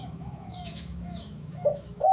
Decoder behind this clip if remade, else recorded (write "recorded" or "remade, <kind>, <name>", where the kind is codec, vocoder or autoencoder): remade, autoencoder, DAC-VAE